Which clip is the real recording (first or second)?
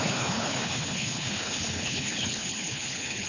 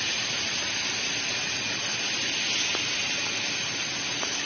second